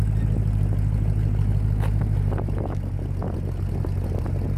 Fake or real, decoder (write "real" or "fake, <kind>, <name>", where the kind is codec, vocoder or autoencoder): real